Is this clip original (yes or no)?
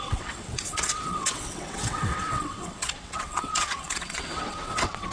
no